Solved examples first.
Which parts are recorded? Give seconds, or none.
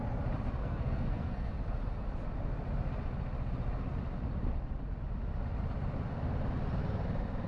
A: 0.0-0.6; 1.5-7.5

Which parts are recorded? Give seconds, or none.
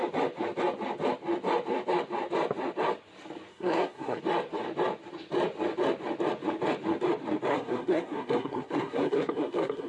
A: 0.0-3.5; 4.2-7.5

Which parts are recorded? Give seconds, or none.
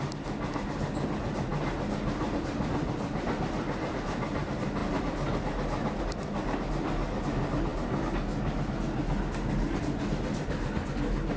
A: 0.0-11.4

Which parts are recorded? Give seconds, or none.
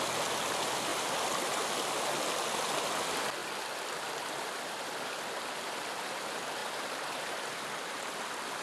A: 0.0-8.6